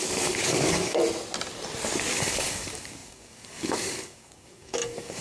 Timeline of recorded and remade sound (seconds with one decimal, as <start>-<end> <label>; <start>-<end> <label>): 0.0-1.0 remade; 1.0-2.1 recorded; 2.1-5.2 remade